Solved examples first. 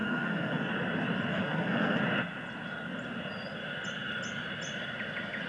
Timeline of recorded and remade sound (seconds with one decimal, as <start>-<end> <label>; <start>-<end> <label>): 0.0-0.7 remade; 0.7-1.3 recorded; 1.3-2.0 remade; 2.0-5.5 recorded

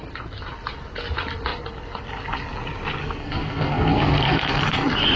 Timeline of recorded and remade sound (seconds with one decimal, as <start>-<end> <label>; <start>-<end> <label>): 0.0-3.0 recorded; 3.0-4.6 remade; 4.6-5.2 recorded

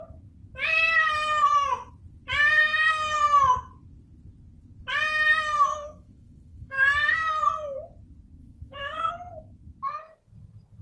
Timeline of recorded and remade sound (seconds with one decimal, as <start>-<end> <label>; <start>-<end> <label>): 0.0-2.5 recorded; 2.5-3.2 remade; 3.2-5.7 recorded; 5.7-7.4 remade; 7.4-8.4 recorded; 8.4-9.1 remade; 9.1-10.8 recorded

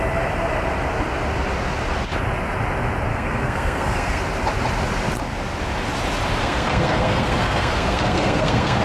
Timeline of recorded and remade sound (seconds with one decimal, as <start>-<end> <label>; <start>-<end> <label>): 0.0-3.1 recorded; 3.1-4.2 remade; 4.2-6.4 recorded; 6.4-8.8 remade

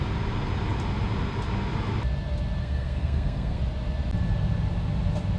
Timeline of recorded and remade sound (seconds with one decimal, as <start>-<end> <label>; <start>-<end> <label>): 0.0-2.6 recorded; 2.6-3.6 remade; 3.6-5.4 recorded

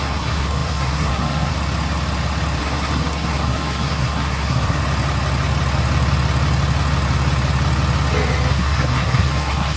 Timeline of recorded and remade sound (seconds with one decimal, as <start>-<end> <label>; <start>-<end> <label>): 0.0-1.5 remade; 1.5-2.6 recorded; 2.6-4.8 remade; 4.8-8.5 recorded; 8.5-9.8 remade

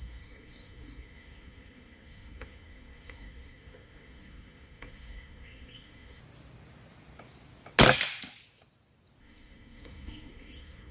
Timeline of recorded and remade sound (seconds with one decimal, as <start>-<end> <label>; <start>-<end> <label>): 0.0-6.2 remade; 6.2-9.2 recorded; 9.2-10.9 remade